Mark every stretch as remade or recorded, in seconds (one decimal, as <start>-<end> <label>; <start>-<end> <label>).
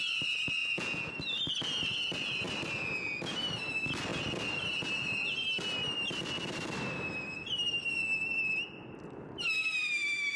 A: 0.0-0.6 recorded; 0.6-1.1 remade; 1.1-10.4 recorded